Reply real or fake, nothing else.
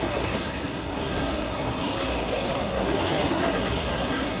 fake